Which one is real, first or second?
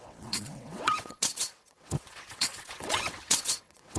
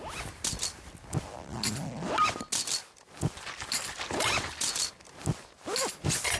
second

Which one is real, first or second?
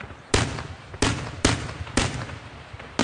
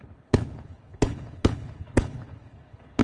first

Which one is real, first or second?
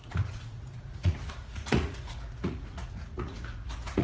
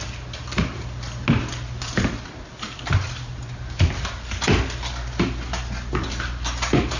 second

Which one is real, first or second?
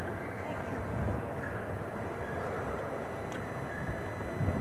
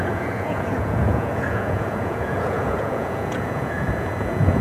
first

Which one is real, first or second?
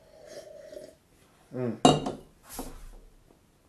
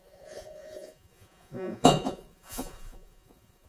first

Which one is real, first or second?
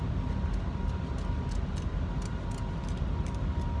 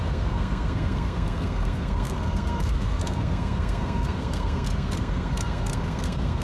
first